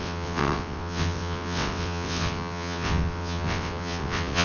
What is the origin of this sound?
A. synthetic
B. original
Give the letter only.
A